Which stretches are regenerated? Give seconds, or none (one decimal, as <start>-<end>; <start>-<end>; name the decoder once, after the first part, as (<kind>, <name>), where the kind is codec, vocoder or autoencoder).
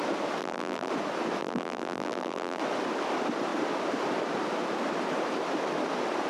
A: 0.4-0.9 (vocoder, BigVGAN v2); 1.4-2.6